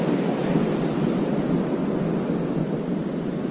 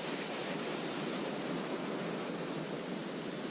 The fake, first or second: second